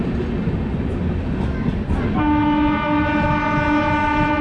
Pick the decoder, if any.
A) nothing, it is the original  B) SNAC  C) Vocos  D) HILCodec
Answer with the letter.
A